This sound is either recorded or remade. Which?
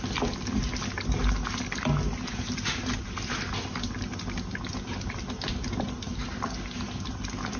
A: recorded